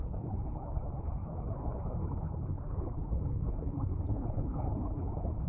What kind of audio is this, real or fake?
fake